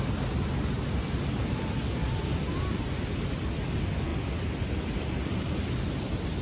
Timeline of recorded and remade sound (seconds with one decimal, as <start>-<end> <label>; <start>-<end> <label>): 0.0-6.4 recorded